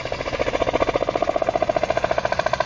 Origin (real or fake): real